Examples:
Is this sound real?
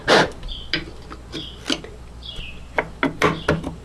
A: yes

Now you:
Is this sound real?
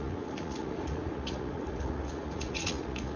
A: no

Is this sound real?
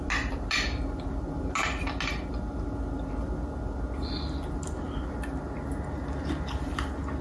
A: yes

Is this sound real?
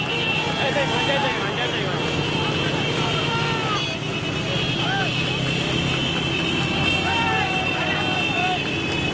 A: yes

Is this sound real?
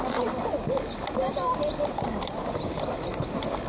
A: no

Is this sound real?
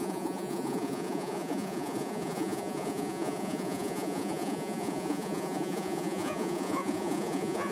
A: no